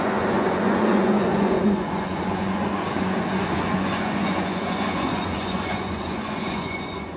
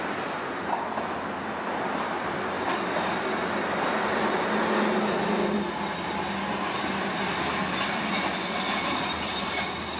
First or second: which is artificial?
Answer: first